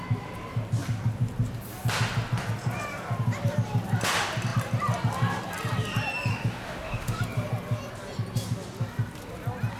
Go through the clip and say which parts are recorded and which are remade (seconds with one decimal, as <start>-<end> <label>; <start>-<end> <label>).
0.0-6.3 recorded; 6.3-7.2 remade; 7.2-9.8 recorded

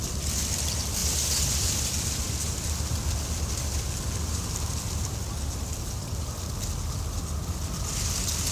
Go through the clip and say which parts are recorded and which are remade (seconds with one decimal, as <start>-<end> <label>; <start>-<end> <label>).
0.0-8.5 recorded

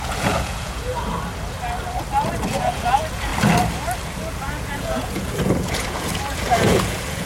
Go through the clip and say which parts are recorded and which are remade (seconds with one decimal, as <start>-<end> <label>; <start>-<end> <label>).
0.0-0.9 remade; 0.9-2.5 recorded; 2.5-3.3 remade; 3.3-4.3 recorded; 4.3-7.3 remade